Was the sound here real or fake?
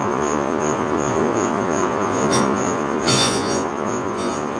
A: fake